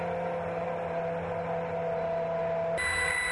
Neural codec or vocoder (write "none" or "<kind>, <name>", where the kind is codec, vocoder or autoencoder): none